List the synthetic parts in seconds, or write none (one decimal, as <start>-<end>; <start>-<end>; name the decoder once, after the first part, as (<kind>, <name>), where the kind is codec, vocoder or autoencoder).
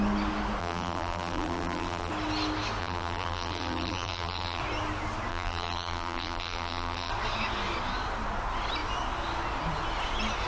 0.6-2.1 (vocoder, BigVGAN v2); 2.8-4.6; 5.3-7.1